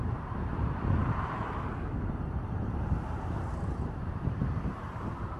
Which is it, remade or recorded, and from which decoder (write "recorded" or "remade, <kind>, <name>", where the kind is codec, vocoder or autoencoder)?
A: remade, vocoder, BigVGAN v2